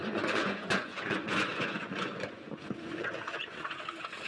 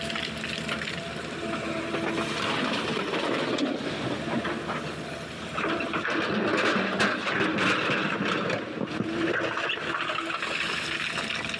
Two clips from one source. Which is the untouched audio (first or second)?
second